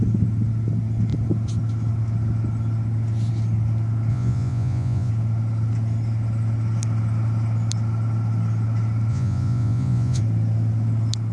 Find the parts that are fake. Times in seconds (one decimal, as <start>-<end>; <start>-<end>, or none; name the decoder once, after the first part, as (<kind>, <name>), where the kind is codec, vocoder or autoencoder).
4.1-5.1 (vocoder, Vocos); 9.1-10.2